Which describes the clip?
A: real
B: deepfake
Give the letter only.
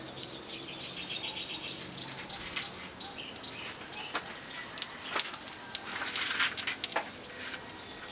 A